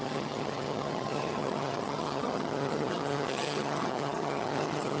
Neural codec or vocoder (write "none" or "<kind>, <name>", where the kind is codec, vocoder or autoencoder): vocoder, HiFi-GAN